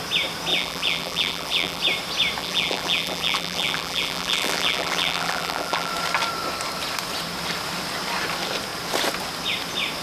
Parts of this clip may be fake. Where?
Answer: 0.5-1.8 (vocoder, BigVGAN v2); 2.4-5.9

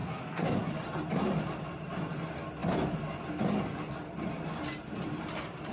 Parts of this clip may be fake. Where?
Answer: 0.0-0.7 (codec, SNAC)

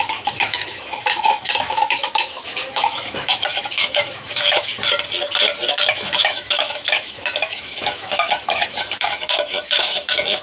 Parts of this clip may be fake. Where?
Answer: 0.0-4.7 (autoencoder, DAC-VAE); 5.7-10.4

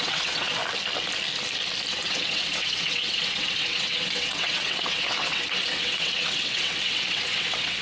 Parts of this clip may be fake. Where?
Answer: 0.0-0.6 (vocoder, WaveNeXt); 1.9-7.8

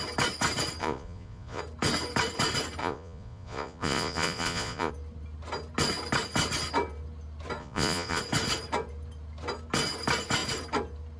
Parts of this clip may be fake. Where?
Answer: 0.8-1.6 (vocoder, Vocos); 2.8-4.9; 7.6-8.2

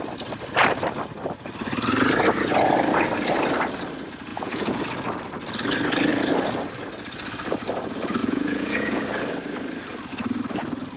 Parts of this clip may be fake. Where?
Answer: 4.3-4.8 (vocoder, Vocos); 8.2-9.0